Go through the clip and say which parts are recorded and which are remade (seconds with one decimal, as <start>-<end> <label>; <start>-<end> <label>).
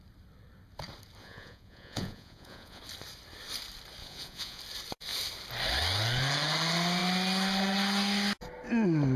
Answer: 0.0-1.2 recorded; 1.2-2.8 remade; 2.8-4.0 recorded; 4.0-4.6 remade; 4.6-9.2 recorded